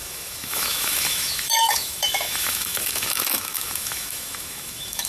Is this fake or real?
fake